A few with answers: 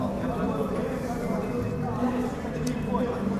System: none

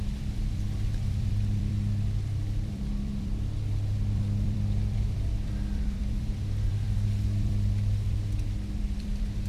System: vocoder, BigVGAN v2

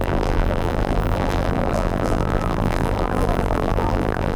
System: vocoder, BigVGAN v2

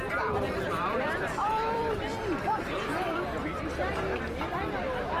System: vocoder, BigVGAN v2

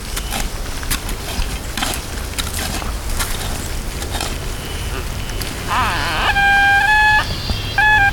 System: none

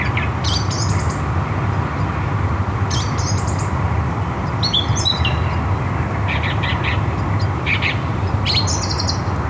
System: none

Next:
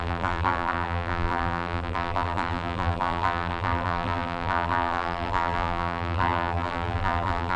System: vocoder, BigVGAN v2